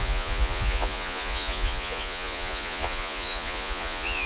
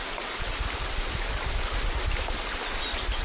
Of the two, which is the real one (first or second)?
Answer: second